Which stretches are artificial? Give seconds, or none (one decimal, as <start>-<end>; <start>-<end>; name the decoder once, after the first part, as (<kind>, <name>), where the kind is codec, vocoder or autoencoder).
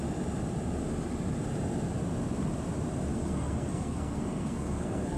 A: 3.1-5.2 (codec, SNAC)